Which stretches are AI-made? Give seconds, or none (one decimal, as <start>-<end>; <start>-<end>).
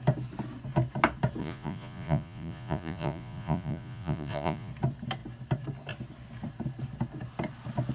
1.4-4.7